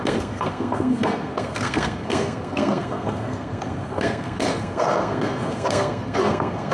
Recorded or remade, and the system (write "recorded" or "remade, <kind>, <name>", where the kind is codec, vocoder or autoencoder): remade, codec, SNAC